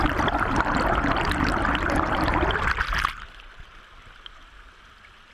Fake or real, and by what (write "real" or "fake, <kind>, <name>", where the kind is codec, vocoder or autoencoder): real